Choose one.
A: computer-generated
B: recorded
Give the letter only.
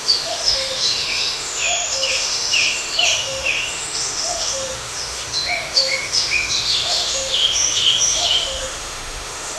A